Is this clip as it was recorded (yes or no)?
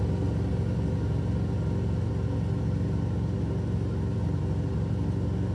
yes